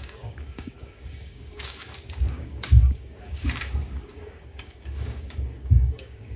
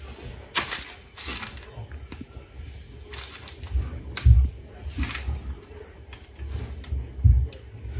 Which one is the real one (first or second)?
second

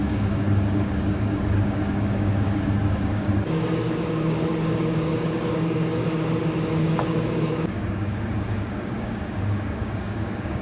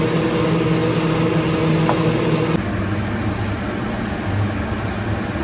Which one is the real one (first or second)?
second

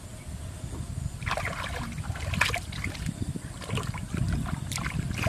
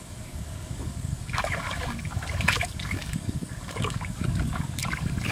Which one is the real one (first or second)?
first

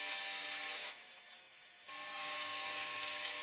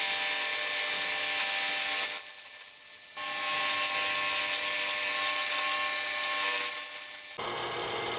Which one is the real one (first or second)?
second